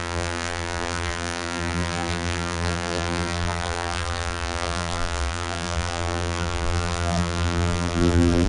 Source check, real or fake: fake